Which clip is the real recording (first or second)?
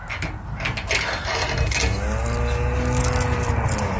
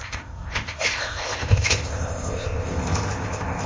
first